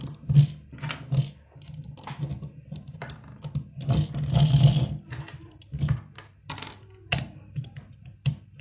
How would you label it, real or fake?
real